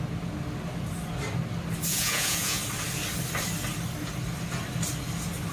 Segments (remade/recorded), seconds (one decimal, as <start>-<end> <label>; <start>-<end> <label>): 0.0-1.9 recorded; 1.9-2.6 remade; 2.6-5.5 recorded

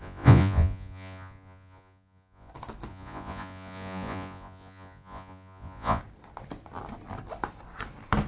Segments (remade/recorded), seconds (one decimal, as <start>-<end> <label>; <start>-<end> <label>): 0.0-2.5 remade; 2.5-2.9 recorded; 2.9-6.0 remade; 6.0-8.3 recorded

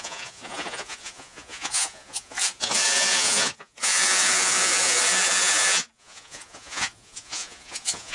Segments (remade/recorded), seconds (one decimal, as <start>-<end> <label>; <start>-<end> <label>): 0.0-8.1 remade

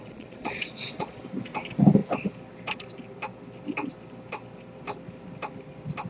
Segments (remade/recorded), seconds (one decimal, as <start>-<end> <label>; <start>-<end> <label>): 0.0-1.2 remade; 1.2-6.1 recorded

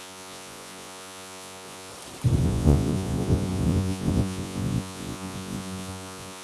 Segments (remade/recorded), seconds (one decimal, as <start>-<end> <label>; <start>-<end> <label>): 0.0-1.9 remade; 1.9-2.4 recorded; 2.4-6.4 remade

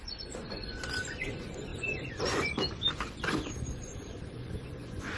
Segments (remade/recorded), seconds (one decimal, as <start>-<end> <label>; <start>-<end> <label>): 0.0-5.2 remade